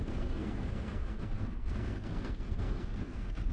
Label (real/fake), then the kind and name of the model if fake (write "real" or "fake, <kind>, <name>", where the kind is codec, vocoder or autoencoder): fake, codec, SNAC